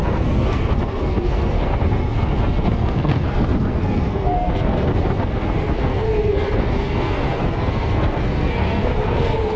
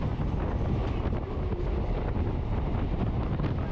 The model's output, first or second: first